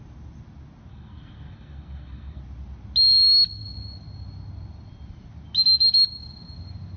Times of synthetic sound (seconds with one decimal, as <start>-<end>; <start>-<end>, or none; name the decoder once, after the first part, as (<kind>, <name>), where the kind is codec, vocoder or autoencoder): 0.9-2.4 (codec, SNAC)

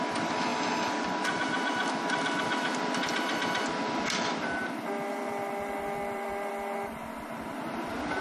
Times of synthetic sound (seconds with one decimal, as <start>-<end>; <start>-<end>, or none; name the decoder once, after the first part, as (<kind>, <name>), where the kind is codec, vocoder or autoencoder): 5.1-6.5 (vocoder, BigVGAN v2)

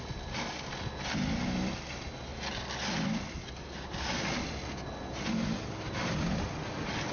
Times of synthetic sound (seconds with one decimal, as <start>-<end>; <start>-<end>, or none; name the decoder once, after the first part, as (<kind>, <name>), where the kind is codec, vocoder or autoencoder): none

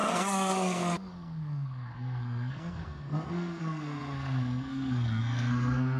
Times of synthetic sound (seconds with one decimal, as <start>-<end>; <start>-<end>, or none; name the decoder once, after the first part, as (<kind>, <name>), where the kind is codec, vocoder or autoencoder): 0.0-6.0 (codec, SNAC)